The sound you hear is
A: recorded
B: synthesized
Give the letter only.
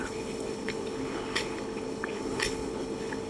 B